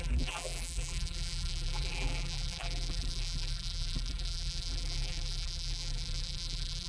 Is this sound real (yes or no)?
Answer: no